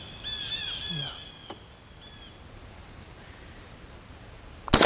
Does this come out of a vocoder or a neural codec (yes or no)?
no